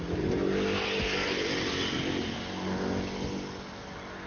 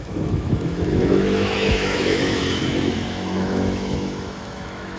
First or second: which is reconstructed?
second